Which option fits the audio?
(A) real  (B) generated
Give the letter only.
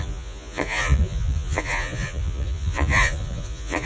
B